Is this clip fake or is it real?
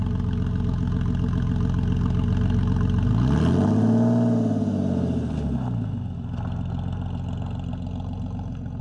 real